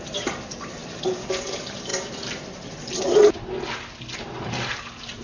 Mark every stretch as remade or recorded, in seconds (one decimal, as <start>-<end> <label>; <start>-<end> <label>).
0.0-5.2 recorded